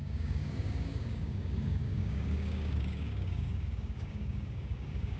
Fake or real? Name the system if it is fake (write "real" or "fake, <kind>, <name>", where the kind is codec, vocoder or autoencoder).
fake, codec, DAC